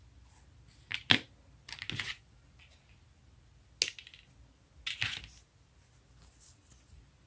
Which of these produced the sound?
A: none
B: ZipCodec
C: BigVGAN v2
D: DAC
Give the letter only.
A